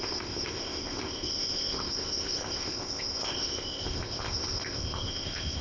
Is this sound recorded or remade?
remade